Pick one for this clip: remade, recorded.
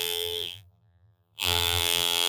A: remade